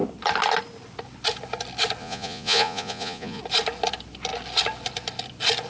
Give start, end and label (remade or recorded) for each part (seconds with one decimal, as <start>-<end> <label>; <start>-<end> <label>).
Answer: 0.0-2.0 recorded; 2.0-3.4 remade; 3.4-5.7 recorded